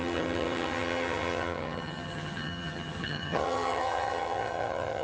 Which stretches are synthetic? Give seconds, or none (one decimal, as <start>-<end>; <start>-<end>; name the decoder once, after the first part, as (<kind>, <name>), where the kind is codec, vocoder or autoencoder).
0.0-5.0 (vocoder, HiFi-GAN)